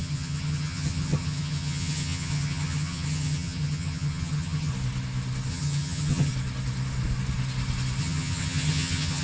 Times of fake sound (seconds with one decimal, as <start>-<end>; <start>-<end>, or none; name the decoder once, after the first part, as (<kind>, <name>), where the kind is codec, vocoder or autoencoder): 0.0-4.7 (vocoder, HiFi-GAN); 5.5-6.3; 8.0-9.2